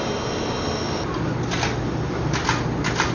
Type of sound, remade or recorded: recorded